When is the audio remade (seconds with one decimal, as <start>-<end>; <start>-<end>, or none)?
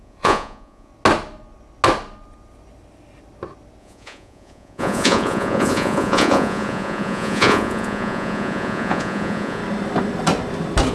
0.0-0.9; 3.8-9.6